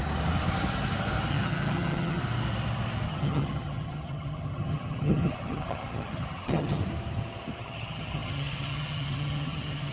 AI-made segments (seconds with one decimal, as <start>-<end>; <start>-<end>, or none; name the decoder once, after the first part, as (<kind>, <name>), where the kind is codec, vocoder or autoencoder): 1.3-2.2 (vocoder, HiFi-GAN); 3.1-6.8; 7.6-9.9